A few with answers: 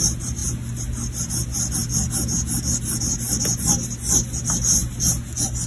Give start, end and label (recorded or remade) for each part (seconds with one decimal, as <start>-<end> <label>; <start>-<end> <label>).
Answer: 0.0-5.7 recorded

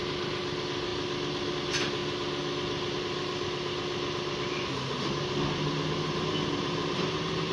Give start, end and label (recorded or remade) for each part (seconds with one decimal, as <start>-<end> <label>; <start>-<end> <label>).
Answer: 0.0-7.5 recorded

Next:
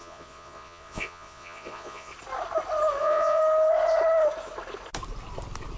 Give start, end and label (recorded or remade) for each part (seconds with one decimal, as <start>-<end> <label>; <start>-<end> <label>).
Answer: 0.0-2.1 remade; 2.1-3.0 recorded; 3.0-3.4 remade; 3.4-5.8 recorded

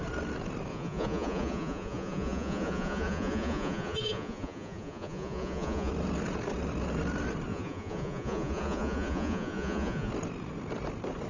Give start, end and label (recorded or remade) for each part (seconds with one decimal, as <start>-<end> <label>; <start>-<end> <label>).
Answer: 0.0-0.7 recorded; 0.7-5.9 remade; 5.9-7.5 recorded; 7.5-10.1 remade; 10.1-11.3 recorded

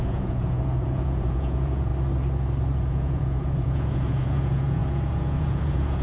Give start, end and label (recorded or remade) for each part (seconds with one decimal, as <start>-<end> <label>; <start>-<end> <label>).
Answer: 0.0-1.9 remade; 1.9-2.8 recorded; 2.8-6.0 remade